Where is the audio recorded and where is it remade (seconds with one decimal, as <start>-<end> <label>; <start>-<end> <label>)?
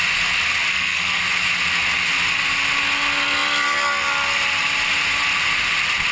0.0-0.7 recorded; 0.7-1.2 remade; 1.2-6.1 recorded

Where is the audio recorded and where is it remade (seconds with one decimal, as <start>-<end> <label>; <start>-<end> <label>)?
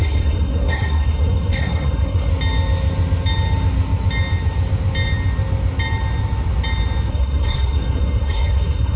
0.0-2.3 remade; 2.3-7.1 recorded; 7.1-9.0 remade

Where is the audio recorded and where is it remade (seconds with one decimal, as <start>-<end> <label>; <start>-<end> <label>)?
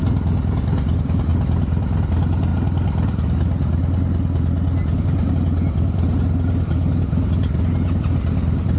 0.0-8.8 recorded